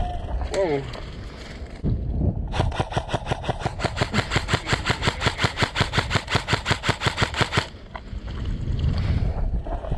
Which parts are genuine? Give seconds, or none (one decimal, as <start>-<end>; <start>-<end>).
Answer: 0.0-10.0